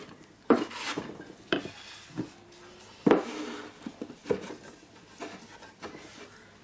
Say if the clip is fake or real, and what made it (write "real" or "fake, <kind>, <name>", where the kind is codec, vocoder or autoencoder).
real